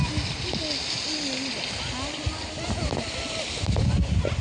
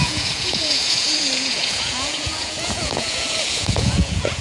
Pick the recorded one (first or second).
first